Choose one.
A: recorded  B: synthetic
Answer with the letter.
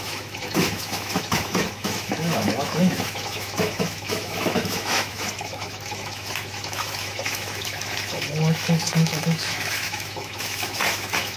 B